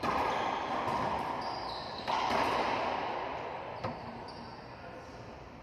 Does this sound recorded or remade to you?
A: recorded